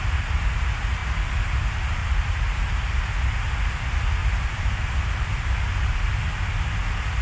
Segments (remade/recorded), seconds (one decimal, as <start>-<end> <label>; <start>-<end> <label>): 0.0-2.0 recorded; 2.0-2.9 remade; 2.9-4.2 recorded; 4.2-6.2 remade; 6.2-7.2 recorded